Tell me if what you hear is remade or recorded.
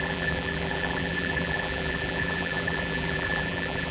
remade